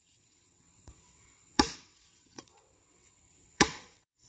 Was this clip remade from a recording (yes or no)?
yes